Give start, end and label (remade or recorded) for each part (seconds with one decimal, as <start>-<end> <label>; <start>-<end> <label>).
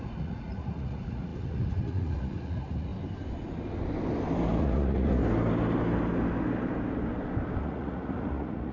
0.0-2.9 remade; 2.9-4.6 recorded; 4.6-5.2 remade; 5.2-7.6 recorded; 7.6-8.7 remade